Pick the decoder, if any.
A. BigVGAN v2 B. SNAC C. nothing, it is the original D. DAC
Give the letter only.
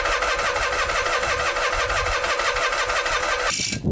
C